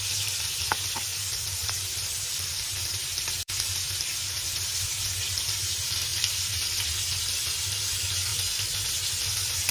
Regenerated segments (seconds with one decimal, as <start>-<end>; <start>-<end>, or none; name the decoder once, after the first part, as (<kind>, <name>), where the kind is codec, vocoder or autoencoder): 1.1-4.4 (vocoder, BigVGAN v2); 6.1-6.8